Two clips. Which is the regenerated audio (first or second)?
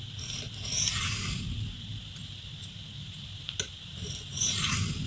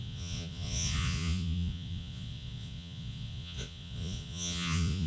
second